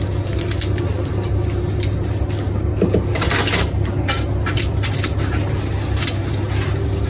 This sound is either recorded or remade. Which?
recorded